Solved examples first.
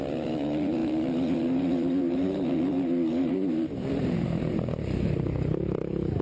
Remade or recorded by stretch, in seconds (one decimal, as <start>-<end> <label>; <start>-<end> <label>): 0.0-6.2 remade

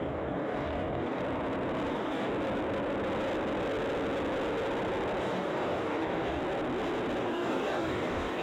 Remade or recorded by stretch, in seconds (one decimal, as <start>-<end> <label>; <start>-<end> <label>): 0.0-1.2 remade; 1.2-1.9 recorded; 1.9-2.3 remade; 2.3-5.2 recorded; 5.2-6.4 remade; 6.4-7.2 recorded; 7.2-8.4 remade

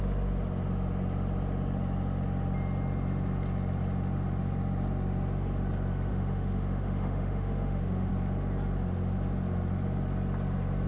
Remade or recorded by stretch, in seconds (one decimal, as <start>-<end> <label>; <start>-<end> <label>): 0.0-6.1 recorded; 6.1-8.1 remade; 8.1-10.9 recorded